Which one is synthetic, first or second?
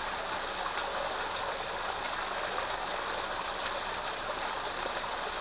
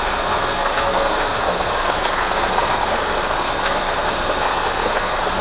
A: second